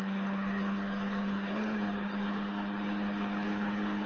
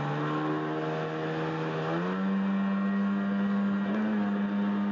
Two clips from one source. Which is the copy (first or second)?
first